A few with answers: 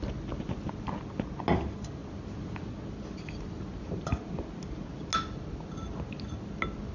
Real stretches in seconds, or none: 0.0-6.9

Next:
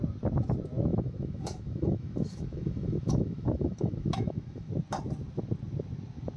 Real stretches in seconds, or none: 0.0-0.9; 4.7-6.4

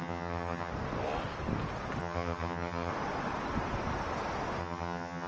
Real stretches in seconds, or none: 0.7-2.0; 2.9-4.6

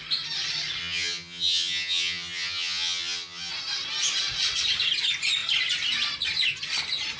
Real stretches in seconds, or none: 0.0-0.8; 3.5-7.2

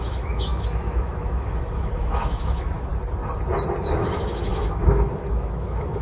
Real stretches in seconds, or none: 2.9-3.8